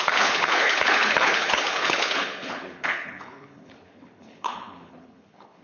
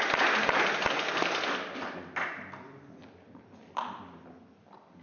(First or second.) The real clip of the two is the second